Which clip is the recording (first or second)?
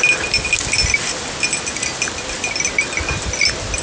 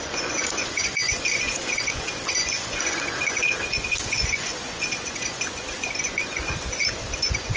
first